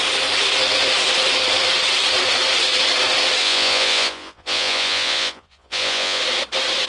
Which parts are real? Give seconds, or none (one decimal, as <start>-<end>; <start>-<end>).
0.0-3.4; 6.2-6.9